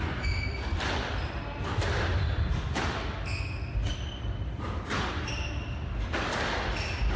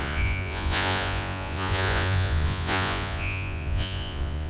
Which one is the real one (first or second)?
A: first